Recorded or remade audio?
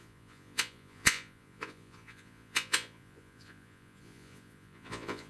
remade